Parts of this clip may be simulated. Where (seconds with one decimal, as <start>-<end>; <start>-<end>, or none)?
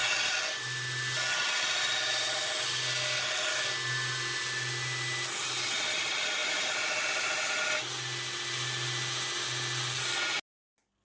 none